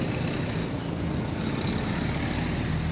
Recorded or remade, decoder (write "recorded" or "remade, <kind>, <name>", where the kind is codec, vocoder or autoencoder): recorded